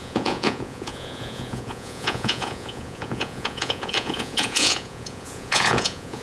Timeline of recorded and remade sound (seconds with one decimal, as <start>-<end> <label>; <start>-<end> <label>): 0.0-6.2 remade

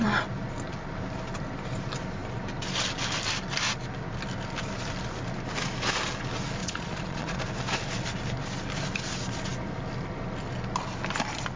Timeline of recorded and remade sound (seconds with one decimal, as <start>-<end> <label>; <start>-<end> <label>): 0.0-6.6 recorded; 6.6-7.4 remade; 7.4-11.6 recorded

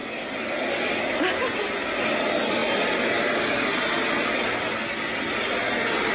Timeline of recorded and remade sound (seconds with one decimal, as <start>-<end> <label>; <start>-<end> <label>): 0.0-6.1 recorded

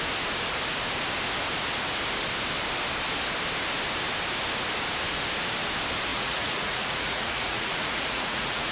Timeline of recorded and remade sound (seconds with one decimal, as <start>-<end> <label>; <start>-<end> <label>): 0.0-6.1 recorded; 6.1-8.7 remade

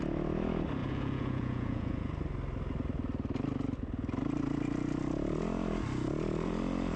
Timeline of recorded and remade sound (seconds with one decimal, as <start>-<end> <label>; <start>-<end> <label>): 0.0-0.8 recorded; 0.8-2.1 remade; 2.1-7.0 recorded

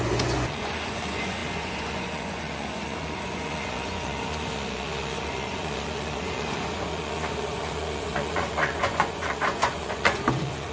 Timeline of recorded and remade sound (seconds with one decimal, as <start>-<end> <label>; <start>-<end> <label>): 0.0-10.7 remade